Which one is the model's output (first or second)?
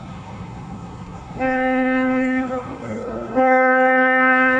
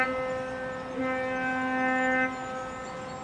first